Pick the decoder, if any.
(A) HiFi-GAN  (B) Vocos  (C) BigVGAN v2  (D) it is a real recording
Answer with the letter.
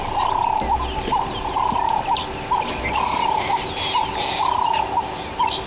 D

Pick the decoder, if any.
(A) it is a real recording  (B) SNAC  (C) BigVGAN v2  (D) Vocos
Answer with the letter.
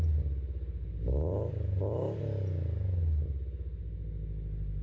A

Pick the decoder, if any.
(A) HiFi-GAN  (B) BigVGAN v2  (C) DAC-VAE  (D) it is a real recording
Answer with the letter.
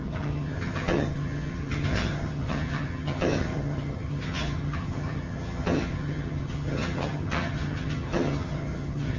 A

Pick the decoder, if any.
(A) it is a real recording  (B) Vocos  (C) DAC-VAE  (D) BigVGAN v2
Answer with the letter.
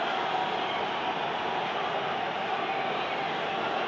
A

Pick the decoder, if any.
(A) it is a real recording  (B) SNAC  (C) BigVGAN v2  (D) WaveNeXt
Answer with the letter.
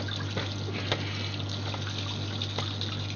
A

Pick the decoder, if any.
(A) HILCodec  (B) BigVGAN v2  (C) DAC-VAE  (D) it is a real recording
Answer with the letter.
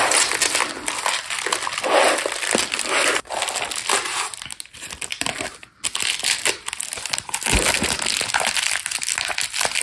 D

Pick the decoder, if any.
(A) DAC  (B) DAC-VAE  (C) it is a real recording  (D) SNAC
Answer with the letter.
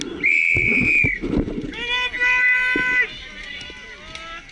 C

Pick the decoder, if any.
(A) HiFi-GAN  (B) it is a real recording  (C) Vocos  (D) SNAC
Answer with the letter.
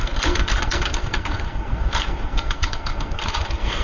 D